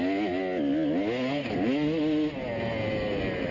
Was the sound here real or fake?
real